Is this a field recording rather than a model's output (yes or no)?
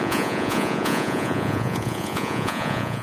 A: no